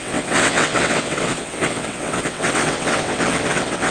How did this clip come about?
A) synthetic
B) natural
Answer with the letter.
A